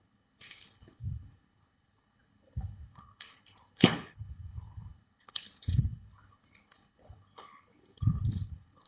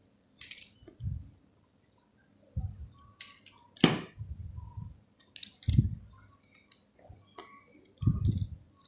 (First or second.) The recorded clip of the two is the second